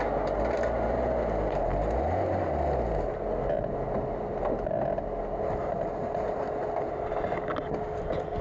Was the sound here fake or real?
real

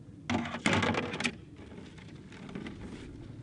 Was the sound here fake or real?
real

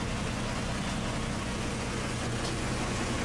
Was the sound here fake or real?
fake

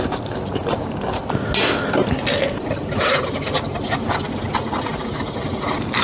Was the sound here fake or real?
real